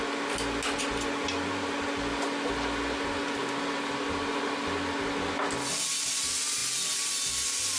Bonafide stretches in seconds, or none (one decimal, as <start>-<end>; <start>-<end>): 0.0-7.8